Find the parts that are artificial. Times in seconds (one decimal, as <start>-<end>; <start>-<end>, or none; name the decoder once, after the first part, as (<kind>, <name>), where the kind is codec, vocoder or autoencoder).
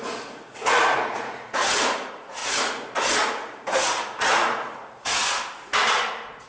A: 0.0-5.2 (vocoder, Vocos); 6.1-6.5